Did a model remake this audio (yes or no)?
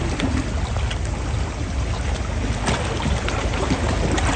no